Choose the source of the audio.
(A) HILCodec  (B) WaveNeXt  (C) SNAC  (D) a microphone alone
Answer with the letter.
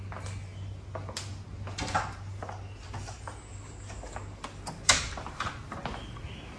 D